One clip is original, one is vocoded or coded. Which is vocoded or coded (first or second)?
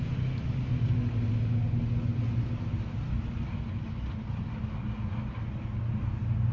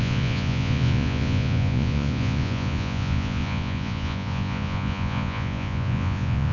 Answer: second